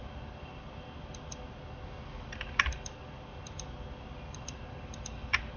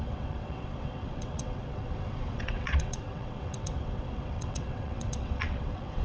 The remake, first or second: second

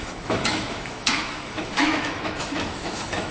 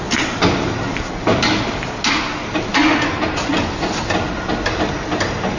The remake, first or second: first